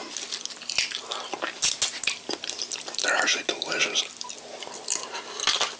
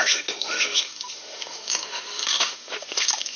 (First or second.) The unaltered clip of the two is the first